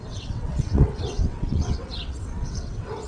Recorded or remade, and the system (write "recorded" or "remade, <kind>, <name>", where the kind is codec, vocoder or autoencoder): remade, vocoder, WaveNeXt